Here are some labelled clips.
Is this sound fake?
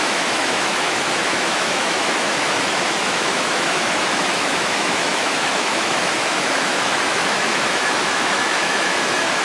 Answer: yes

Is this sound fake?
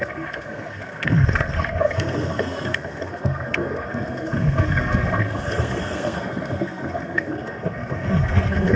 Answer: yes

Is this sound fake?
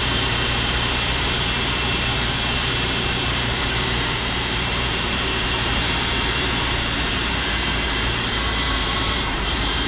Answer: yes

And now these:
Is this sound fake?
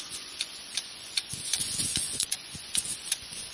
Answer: yes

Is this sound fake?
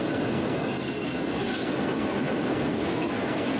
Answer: yes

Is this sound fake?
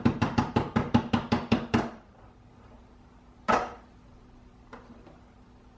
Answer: yes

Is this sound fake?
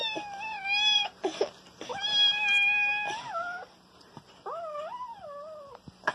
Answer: no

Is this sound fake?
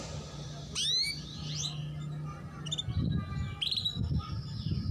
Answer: no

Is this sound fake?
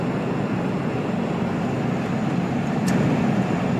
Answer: no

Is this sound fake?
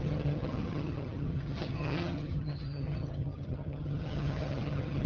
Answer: yes